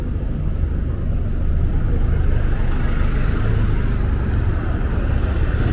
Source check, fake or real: real